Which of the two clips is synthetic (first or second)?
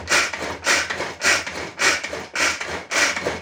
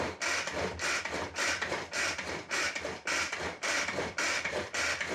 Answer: second